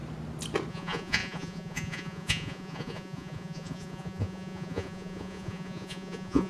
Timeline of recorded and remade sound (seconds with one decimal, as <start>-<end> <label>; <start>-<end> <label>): 0.0-0.7 recorded; 0.7-6.5 remade